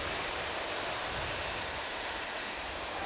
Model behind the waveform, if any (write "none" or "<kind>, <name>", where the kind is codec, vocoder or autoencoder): vocoder, BigVGAN v2